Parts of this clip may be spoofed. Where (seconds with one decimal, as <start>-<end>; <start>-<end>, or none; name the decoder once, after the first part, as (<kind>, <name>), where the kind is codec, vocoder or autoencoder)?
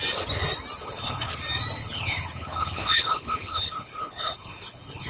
0.8-1.3 (codec, HILCodec); 1.8-5.1